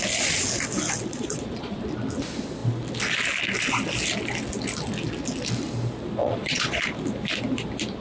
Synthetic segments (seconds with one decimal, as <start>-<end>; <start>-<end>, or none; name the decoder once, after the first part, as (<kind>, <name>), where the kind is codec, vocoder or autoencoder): 1.1-1.8 (vocoder, Vocos); 6.2-6.8